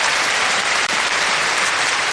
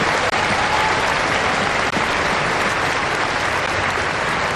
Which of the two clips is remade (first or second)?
first